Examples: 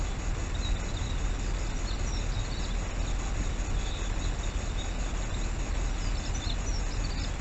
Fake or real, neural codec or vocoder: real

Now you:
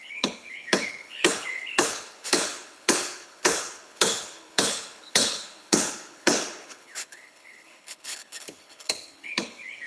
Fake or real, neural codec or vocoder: fake, codec, HILCodec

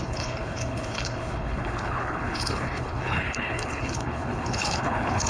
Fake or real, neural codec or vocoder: fake, codec, HILCodec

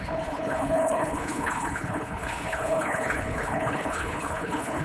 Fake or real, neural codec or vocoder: fake, codec, HILCodec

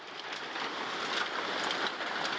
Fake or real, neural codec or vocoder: real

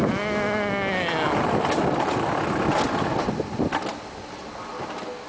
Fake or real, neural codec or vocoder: real